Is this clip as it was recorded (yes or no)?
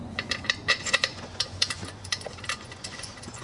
no